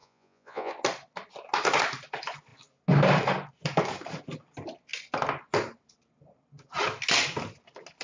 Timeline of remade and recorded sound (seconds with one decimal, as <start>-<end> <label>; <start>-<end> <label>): 0.0-0.7 remade; 0.7-8.0 recorded